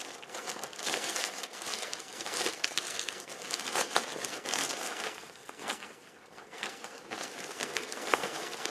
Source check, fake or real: fake